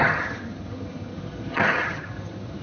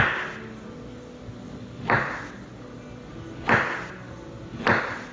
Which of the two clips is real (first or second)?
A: second